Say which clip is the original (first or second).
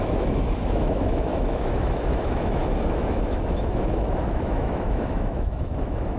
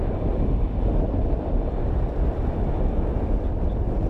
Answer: second